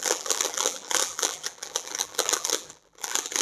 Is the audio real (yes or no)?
no